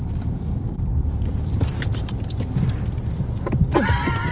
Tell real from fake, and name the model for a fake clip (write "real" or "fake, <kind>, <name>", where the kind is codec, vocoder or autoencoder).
fake, vocoder, BigVGAN v2